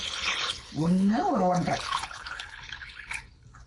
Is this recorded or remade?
remade